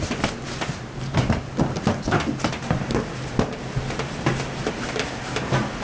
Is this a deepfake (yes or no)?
no